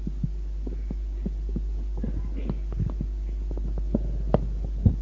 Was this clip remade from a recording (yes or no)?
no